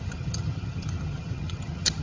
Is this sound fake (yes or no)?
yes